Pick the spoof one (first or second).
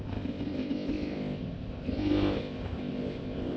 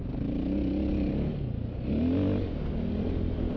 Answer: first